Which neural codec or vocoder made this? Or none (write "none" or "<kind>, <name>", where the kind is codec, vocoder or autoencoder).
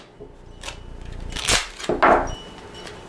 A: none